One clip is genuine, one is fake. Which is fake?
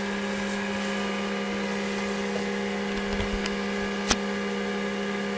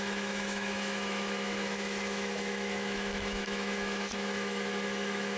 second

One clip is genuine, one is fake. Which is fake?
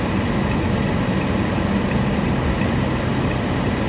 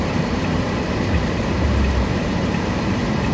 second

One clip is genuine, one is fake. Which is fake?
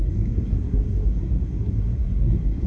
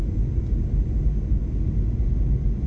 first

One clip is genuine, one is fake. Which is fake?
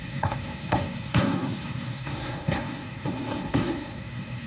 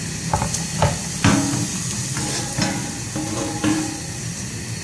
first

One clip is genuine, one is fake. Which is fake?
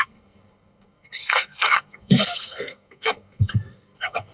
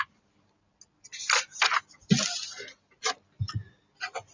first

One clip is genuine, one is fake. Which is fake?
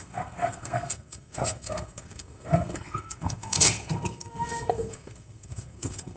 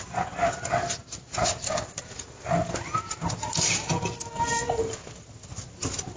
first